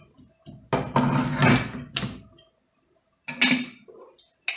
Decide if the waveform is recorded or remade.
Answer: recorded